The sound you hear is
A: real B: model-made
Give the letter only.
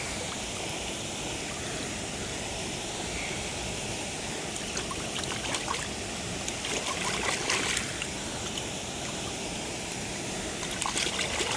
A